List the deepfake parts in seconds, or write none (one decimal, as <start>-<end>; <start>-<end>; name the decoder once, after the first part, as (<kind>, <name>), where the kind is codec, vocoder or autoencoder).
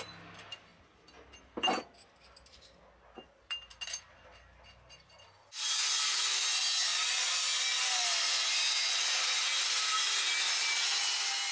none